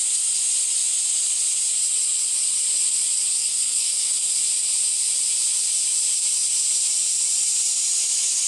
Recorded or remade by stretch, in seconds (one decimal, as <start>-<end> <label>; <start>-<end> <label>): 0.0-3.4 recorded; 3.4-4.3 remade; 4.3-8.5 recorded